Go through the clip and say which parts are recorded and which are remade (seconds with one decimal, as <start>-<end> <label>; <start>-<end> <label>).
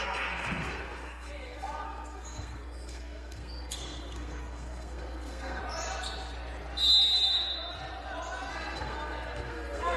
0.0-5.6 remade; 5.6-8.5 recorded; 8.5-10.0 remade